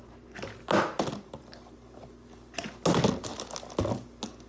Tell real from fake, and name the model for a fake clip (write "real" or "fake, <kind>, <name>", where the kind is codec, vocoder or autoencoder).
real